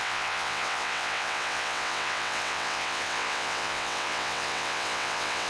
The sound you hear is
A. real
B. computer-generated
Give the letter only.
B